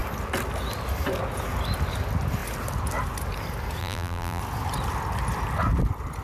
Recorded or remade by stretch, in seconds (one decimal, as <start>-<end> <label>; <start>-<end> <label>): 0.0-3.8 recorded; 3.8-4.4 remade; 4.4-6.2 recorded